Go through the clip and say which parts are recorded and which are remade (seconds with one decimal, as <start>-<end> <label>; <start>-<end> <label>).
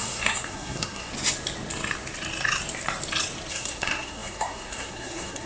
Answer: 0.0-1.1 remade; 1.1-3.5 recorded; 3.5-5.5 remade